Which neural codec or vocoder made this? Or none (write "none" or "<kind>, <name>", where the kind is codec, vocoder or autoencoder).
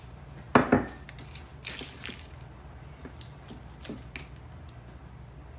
none